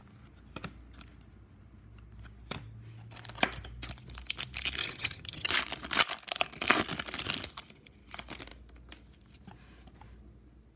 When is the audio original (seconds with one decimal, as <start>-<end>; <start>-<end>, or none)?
0.0-4.8; 5.5-10.8